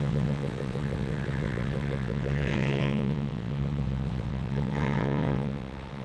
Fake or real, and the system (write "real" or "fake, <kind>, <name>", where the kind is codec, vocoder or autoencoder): fake, vocoder, WaveNeXt